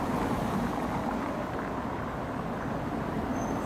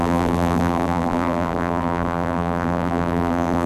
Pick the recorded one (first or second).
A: first